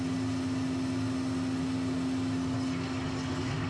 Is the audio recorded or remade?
recorded